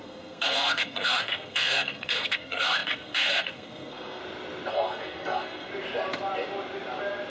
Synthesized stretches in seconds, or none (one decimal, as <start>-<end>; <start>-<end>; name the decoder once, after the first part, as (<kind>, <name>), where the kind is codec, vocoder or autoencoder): 0.0-4.2 (codec, SNAC); 4.7-5.7